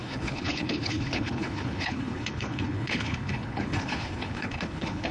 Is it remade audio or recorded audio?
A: remade